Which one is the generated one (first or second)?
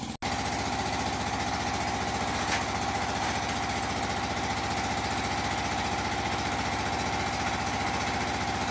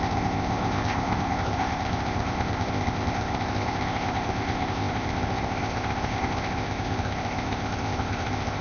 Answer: second